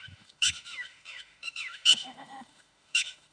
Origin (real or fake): fake